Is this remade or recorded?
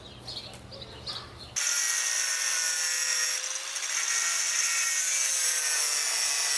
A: recorded